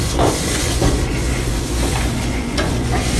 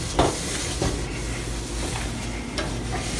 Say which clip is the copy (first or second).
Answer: first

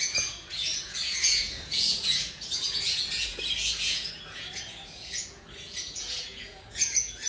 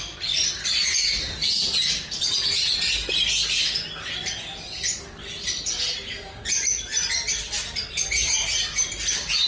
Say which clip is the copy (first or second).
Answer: first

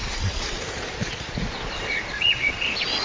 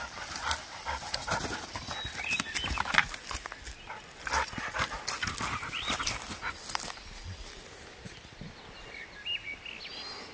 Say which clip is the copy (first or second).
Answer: first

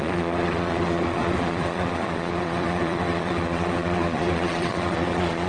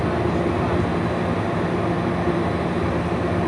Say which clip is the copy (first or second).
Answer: first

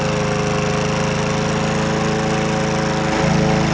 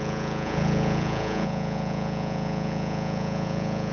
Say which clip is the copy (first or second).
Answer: second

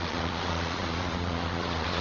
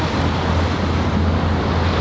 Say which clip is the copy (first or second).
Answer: first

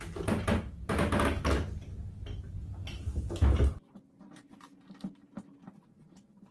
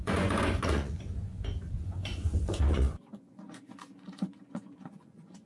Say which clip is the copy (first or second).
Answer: second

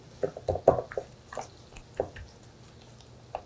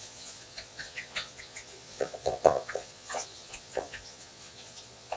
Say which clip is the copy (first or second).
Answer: second